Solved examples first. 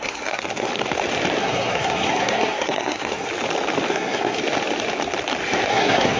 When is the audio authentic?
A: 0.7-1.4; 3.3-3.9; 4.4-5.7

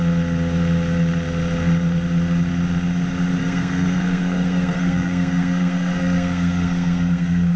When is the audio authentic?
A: 0.0-3.4